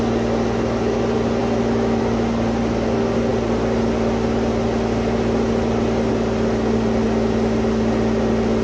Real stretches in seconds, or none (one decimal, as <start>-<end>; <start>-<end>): 0.0-8.6